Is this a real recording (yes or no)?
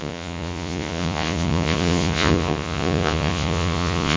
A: no